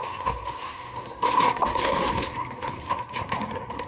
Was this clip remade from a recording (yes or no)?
yes